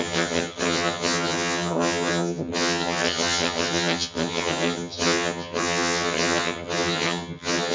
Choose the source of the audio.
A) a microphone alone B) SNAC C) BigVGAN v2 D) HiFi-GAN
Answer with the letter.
D